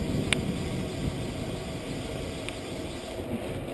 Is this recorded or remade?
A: recorded